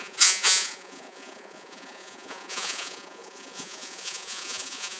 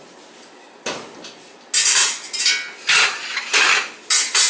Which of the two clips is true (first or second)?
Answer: second